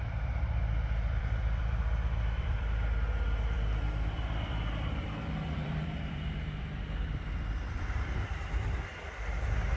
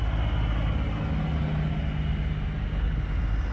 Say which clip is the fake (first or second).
first